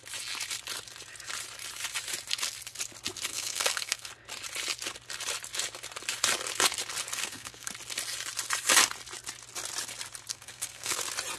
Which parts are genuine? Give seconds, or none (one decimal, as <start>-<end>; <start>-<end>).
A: 0.0-3.3; 4.1-7.2; 7.7-10.3; 11.0-11.4